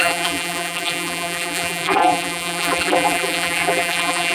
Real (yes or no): no